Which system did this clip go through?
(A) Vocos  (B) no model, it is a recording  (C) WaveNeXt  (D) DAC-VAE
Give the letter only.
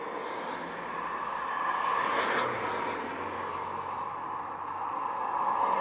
B